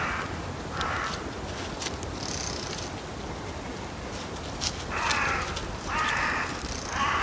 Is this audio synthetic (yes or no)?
no